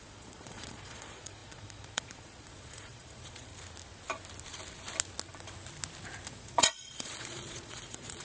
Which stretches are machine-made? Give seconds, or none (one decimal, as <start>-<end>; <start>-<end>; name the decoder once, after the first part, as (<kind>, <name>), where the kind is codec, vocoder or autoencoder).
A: 0.0-3.5 (vocoder, Vocos); 6.3-8.2